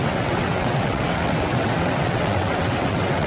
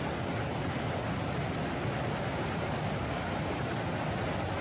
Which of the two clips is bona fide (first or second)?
second